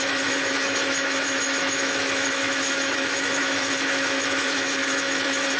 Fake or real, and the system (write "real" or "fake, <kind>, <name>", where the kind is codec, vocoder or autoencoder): fake, autoencoder, DAC-VAE